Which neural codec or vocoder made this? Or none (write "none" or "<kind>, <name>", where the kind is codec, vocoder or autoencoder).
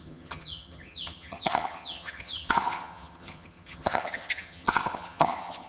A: vocoder, HiFi-GAN